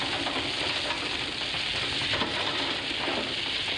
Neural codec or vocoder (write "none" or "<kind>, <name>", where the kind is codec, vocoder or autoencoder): none